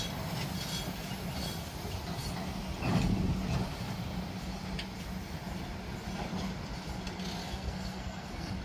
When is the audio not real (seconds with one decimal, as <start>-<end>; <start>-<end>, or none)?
7.4-8.6